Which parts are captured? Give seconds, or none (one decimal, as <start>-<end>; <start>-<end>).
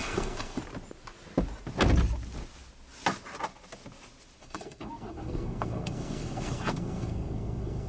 0.6-4.4